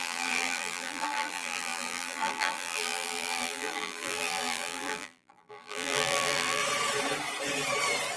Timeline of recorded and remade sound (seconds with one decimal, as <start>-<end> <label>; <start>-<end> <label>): 0.0-6.6 remade; 6.6-8.2 recorded